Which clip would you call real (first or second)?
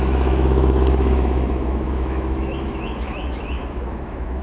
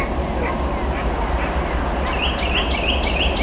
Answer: second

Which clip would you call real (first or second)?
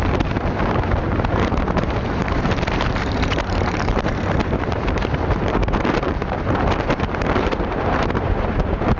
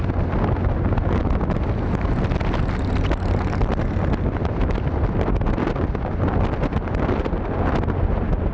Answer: second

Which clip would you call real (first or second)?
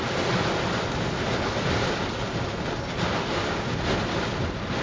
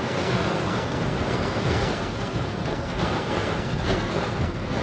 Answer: first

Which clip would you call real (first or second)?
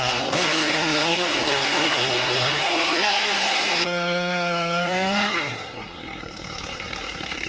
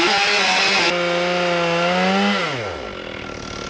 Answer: second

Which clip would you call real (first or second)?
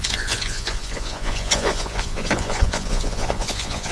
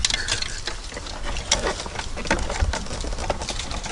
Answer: second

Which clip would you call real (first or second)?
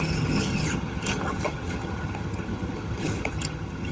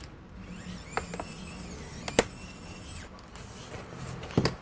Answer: second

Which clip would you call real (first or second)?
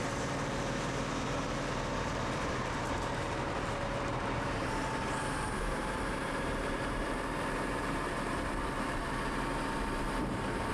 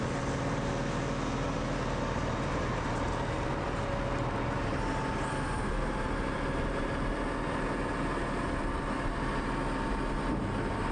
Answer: second